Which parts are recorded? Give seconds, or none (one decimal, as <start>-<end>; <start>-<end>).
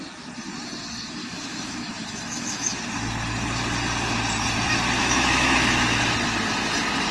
0.0-1.2; 2.8-5.0; 6.0-7.1